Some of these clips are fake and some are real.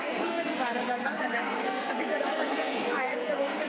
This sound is fake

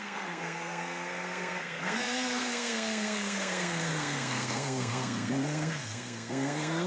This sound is fake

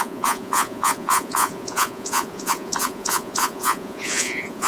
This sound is fake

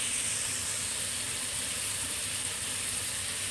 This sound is fake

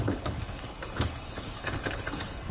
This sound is fake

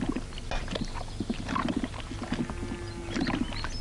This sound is real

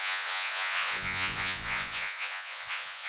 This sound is fake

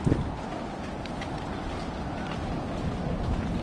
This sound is real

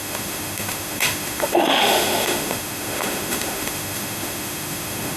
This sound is fake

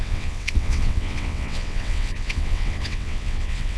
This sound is fake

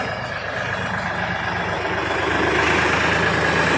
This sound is real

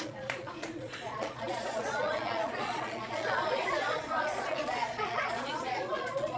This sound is fake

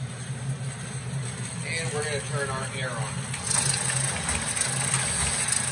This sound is real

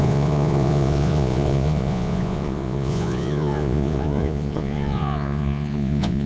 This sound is fake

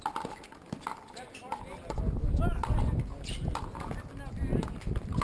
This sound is real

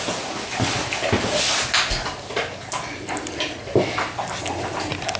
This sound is real